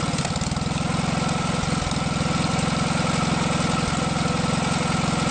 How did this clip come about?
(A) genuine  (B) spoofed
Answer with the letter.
A